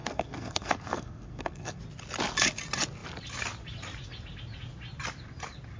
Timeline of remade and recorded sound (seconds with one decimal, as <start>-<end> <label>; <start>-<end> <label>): 0.0-1.8 remade; 1.8-5.8 recorded